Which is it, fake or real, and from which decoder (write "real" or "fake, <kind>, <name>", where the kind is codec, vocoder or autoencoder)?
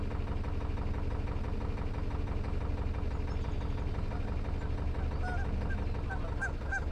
real